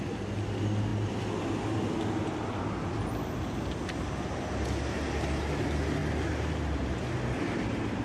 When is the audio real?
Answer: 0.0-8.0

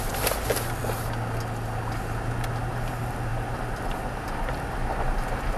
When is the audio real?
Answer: 0.0-5.6

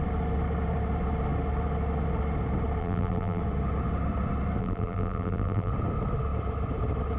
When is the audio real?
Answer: 0.0-2.8; 3.4-4.6; 5.7-7.2

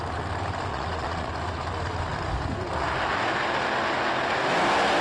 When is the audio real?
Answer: 0.0-0.7; 1.3-5.0

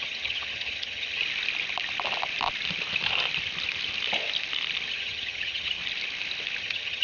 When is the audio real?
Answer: 1.2-4.9; 5.8-6.6

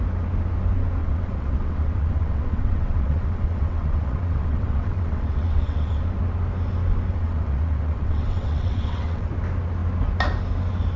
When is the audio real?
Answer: 0.0-1.0; 6.0-7.1; 9.3-11.0